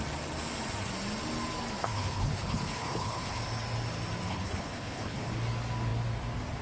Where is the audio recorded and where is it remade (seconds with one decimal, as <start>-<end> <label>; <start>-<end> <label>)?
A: 0.0-1.8 recorded; 1.8-3.4 remade; 3.4-4.3 recorded; 4.3-5.3 remade; 5.3-6.6 recorded